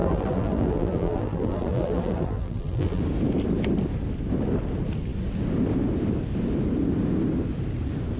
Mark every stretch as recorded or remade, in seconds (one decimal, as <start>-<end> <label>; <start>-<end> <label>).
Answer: 0.0-3.0 remade; 3.0-8.2 recorded